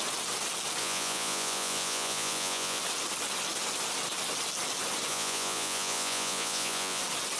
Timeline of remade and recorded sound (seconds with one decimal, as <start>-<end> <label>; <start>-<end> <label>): 0.0-0.8 recorded; 0.8-2.8 remade; 2.8-5.1 recorded; 5.1-7.0 remade; 7.0-7.4 recorded